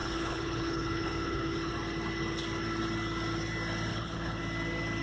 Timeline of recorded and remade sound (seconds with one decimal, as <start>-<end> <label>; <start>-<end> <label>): 0.0-1.7 remade; 1.7-3.9 recorded; 3.9-4.4 remade; 4.4-5.0 recorded

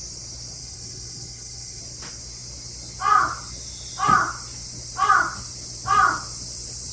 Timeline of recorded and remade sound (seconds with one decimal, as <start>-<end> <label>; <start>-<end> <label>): 0.0-0.6 recorded; 0.6-1.8 remade; 1.8-6.9 recorded